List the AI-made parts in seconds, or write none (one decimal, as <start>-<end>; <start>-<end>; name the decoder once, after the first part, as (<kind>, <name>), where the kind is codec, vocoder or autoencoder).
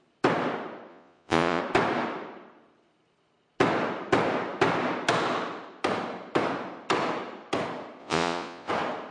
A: 0.9-1.6 (vocoder, Vocos); 8.0-8.7